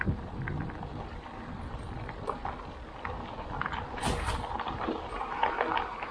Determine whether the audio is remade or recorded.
recorded